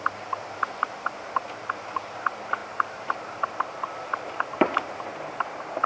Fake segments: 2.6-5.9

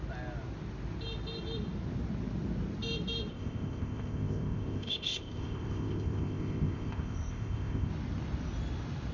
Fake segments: 3.3-7.9